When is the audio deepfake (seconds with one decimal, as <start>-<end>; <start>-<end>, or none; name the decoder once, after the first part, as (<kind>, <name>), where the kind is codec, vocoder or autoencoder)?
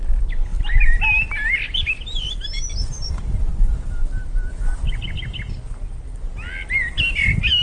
2.8-3.5 (vocoder, BigVGAN v2)